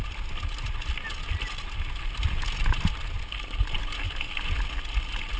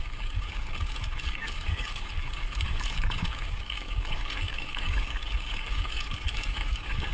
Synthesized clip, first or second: second